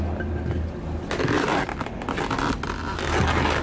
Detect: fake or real real